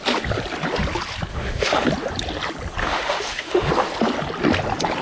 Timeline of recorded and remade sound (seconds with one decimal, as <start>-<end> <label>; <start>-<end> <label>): 0.0-1.3 recorded; 1.3-1.9 remade; 1.9-2.8 recorded; 2.8-3.7 remade; 3.7-5.0 recorded